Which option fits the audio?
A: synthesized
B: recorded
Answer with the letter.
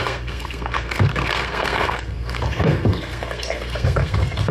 A